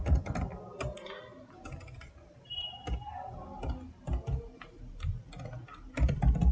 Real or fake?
real